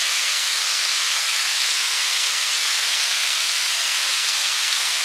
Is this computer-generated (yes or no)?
yes